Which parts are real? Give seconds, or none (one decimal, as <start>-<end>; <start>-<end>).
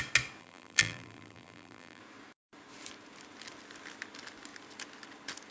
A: 0.0-0.4; 2.0-5.5